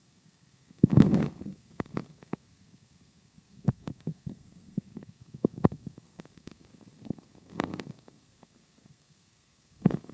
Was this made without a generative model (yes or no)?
no